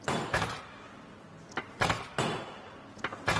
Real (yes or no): yes